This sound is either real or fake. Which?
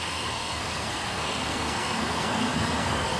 fake